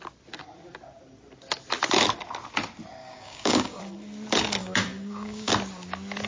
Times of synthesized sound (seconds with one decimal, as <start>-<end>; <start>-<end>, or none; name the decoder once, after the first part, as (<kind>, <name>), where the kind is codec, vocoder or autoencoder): 3.0-3.8 (codec, DAC); 4.6-5.5